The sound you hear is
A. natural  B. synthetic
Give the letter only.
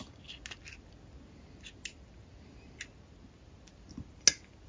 A